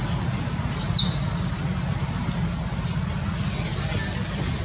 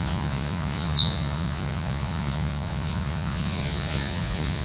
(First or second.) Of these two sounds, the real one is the first